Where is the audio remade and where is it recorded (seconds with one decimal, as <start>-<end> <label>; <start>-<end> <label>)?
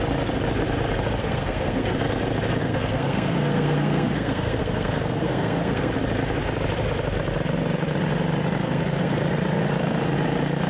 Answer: 0.0-1.2 recorded; 1.2-2.0 remade; 2.0-2.6 recorded; 2.6-5.9 remade; 5.9-8.6 recorded; 8.6-9.2 remade; 9.2-10.7 recorded